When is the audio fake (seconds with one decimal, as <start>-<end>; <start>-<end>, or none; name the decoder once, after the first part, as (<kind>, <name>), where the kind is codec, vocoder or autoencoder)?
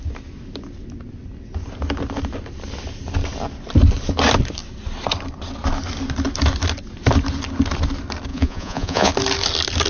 8.3-9.1 (vocoder, Vocos)